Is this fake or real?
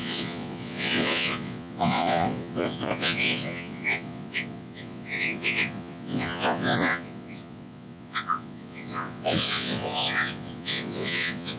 fake